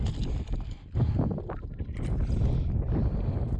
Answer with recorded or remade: recorded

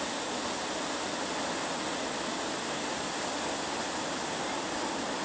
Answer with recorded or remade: recorded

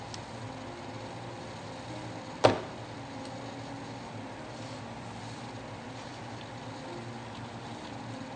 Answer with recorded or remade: recorded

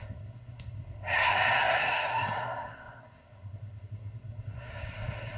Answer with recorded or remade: remade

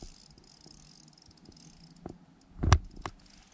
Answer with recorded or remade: recorded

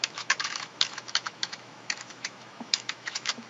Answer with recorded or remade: remade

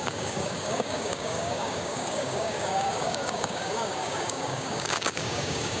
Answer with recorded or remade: remade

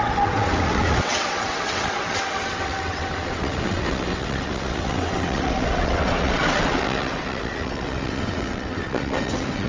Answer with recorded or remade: remade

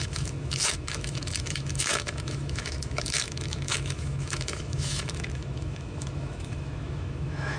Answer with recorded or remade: remade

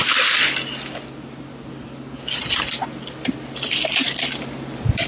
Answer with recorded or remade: recorded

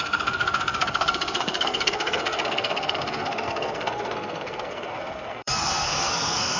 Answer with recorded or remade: remade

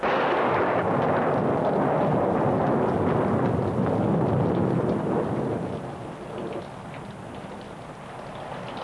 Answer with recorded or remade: recorded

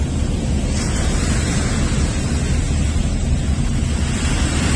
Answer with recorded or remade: recorded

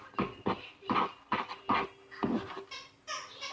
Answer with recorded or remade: recorded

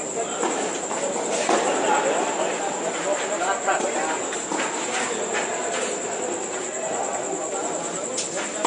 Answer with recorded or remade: recorded